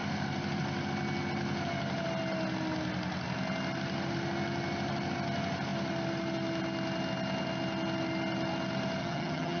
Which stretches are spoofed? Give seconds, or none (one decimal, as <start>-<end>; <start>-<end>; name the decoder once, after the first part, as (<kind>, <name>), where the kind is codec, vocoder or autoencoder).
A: 9.0-9.6 (vocoder, HiFi-GAN)